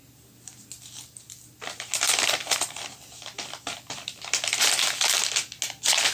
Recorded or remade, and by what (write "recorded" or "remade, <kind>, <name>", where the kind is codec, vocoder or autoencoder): recorded